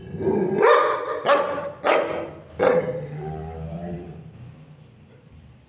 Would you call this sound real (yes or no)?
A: no